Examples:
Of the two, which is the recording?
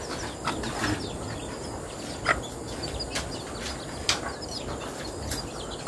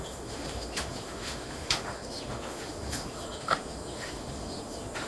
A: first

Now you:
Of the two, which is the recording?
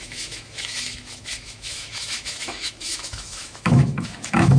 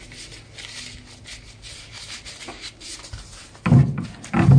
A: second